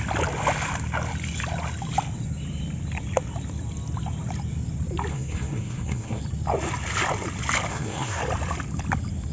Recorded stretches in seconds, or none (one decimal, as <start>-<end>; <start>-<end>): 0.0-5.1; 6.2-7.7; 8.2-9.3